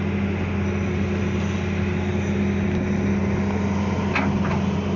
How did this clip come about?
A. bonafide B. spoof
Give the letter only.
A